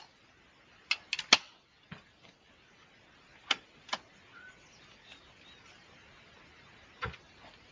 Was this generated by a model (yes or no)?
no